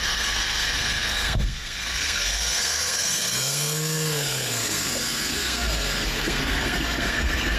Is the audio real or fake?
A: fake